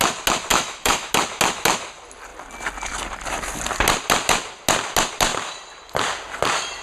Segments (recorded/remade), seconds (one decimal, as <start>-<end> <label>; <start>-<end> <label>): 0.0-0.5 recorded; 0.5-1.1 remade; 1.1-6.8 recorded